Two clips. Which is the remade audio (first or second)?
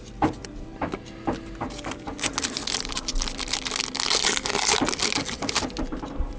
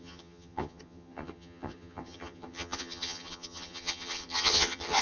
second